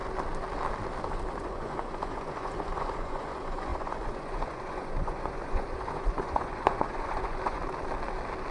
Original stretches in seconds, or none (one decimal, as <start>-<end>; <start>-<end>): 0.0-1.3; 7.6-8.5